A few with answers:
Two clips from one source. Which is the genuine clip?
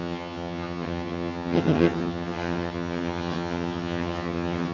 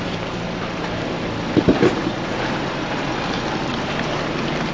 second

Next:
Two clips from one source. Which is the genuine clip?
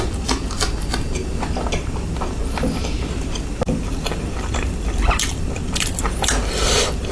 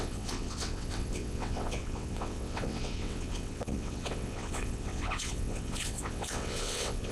first